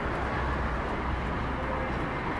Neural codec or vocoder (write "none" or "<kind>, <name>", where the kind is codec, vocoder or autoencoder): none